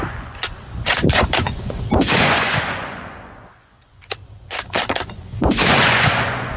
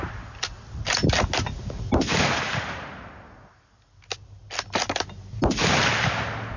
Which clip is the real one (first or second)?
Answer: second